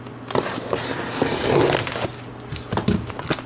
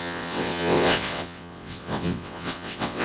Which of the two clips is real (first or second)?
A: first